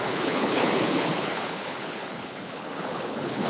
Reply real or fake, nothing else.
fake